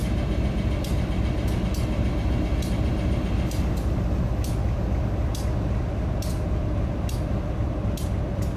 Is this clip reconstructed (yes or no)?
no